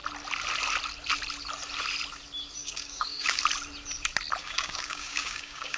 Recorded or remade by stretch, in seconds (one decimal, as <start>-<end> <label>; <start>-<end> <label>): 0.0-2.6 recorded; 2.6-3.4 remade; 3.4-4.4 recorded; 4.4-5.8 remade